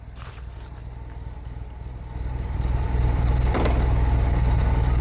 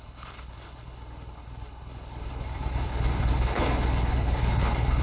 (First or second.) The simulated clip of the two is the second